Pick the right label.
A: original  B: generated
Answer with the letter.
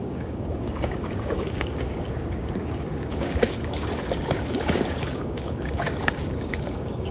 B